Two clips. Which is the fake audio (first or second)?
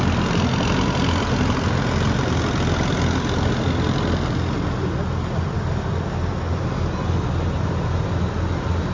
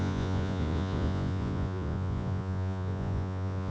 second